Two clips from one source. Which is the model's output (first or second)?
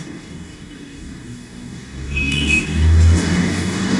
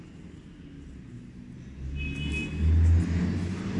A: first